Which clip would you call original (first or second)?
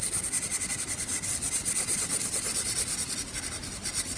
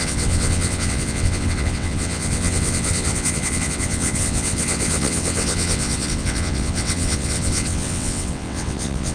first